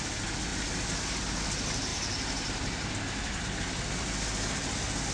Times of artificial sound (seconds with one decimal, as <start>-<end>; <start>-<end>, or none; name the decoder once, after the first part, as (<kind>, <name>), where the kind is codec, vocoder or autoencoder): 1.9-3.4 (vocoder, BigVGAN v2)